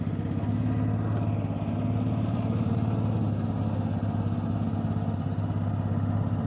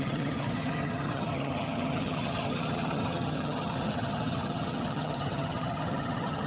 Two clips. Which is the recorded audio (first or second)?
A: first